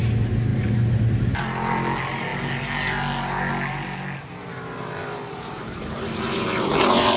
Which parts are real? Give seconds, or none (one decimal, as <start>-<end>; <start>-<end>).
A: 0.0-0.5; 1.4-4.4